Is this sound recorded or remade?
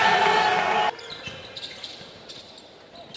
recorded